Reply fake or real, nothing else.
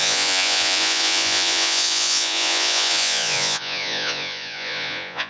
fake